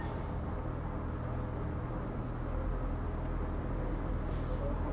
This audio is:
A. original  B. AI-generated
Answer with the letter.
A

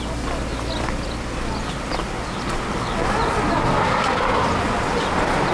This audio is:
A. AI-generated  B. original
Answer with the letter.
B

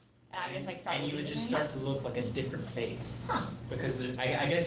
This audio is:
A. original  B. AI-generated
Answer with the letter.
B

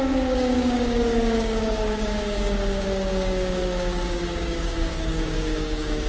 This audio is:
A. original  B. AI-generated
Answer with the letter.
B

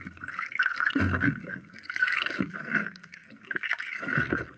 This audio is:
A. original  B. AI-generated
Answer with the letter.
B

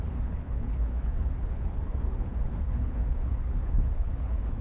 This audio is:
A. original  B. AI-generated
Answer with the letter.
B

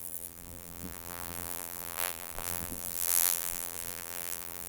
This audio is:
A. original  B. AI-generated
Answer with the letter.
B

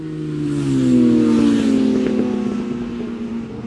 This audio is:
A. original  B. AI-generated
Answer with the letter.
A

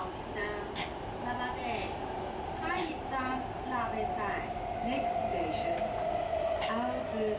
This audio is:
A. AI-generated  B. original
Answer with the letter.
B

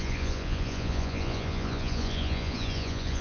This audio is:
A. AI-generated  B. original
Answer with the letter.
A